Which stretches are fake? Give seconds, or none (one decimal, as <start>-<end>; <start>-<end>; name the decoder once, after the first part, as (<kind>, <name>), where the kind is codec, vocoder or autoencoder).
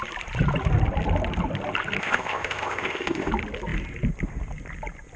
2.0-3.3 (codec, ZipCodec)